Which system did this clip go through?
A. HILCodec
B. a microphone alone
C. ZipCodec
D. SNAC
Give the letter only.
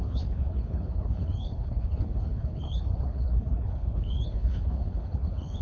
A